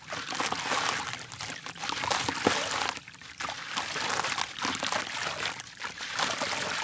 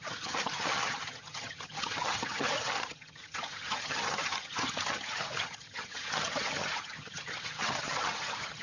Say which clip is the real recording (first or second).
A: first